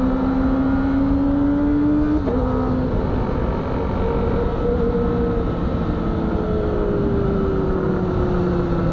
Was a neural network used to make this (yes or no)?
no